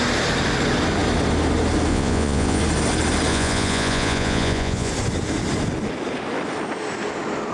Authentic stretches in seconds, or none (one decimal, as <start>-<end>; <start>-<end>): 0.0-1.9; 2.6-3.3; 4.9-7.5